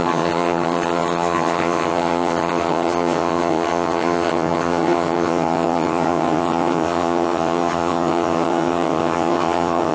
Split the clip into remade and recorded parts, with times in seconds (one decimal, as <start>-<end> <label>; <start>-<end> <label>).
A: 0.0-9.9 remade